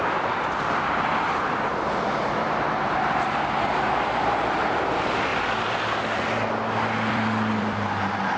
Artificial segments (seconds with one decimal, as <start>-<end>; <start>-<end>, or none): 0.0-5.3; 7.1-8.4